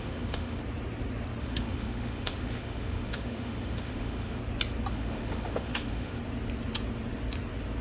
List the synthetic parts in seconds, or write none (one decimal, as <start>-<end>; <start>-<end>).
0.0-0.6; 1.4-4.4; 4.9-6.2